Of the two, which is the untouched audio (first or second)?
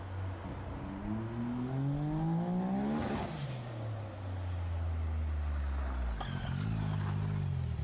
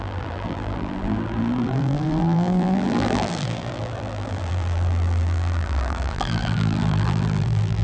first